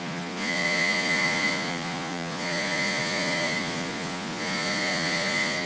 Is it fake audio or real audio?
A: fake